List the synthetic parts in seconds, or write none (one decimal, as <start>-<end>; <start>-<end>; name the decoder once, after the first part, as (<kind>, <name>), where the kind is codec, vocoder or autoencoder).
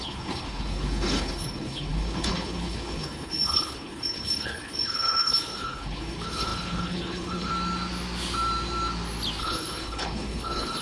0.0-7.5 (codec, HILCodec); 9.4-10.8